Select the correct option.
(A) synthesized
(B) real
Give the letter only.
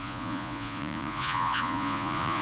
A